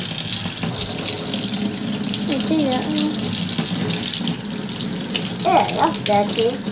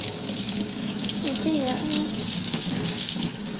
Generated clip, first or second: second